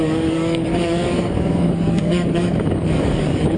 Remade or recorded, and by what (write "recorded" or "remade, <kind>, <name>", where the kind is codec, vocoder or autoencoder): remade, codec, DAC